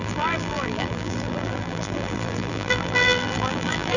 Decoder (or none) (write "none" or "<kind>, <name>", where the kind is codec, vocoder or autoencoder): vocoder, BigVGAN v2